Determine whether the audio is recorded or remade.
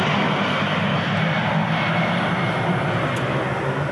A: recorded